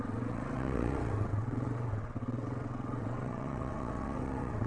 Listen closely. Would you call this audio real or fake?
fake